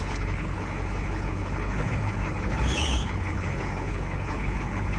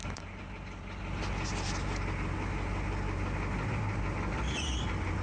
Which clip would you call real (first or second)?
second